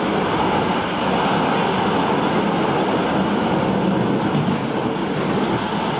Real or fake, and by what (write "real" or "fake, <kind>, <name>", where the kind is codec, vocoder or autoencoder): real